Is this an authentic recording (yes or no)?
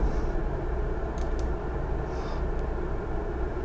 yes